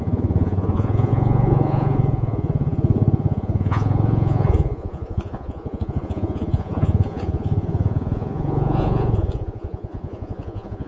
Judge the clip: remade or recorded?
remade